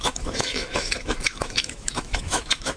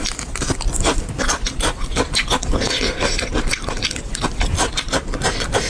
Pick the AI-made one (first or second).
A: first